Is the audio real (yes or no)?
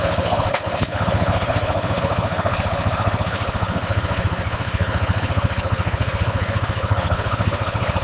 no